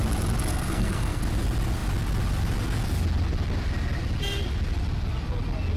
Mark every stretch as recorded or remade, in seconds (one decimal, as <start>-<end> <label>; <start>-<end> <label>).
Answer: 0.0-0.5 recorded; 0.5-1.2 remade; 1.2-5.8 recorded